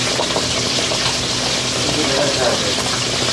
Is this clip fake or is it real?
real